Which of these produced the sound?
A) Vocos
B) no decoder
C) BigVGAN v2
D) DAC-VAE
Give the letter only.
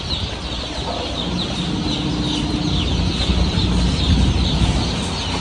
B